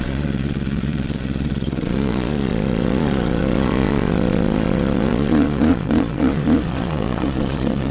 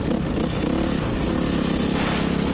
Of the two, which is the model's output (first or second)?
first